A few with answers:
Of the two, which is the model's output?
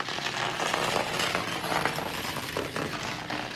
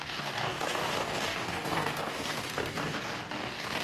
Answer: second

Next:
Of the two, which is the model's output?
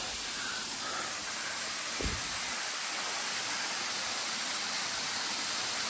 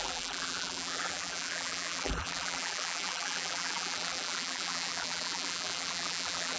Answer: second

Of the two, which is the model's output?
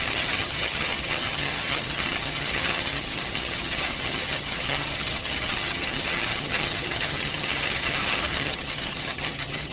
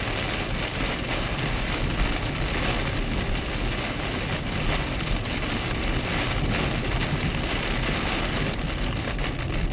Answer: first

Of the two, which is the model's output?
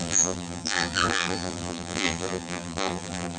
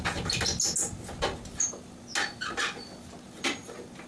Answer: first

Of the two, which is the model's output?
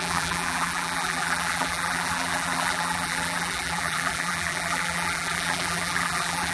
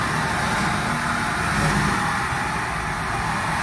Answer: first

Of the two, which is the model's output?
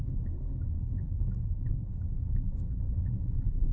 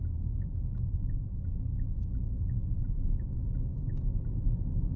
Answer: first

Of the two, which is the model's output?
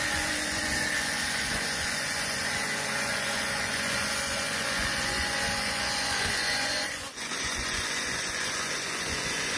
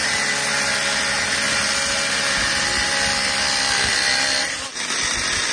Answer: first